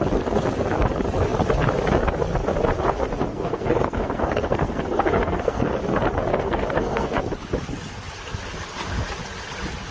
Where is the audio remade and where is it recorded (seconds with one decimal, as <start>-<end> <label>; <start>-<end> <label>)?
0.0-3.3 recorded; 3.3-5.8 remade; 5.8-6.3 recorded; 6.3-7.2 remade; 7.2-9.9 recorded